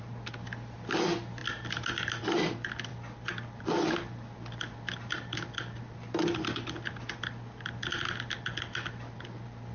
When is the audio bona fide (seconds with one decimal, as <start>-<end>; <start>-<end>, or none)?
0.0-9.7